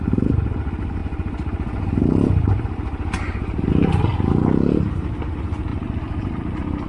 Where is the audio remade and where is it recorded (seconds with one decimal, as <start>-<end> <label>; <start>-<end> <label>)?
0.0-6.9 recorded